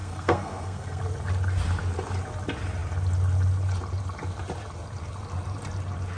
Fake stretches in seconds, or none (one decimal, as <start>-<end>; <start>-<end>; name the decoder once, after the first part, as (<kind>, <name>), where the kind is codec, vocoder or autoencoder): 0.0-1.0 (codec, SNAC)